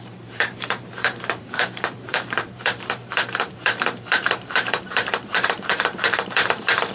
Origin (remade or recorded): remade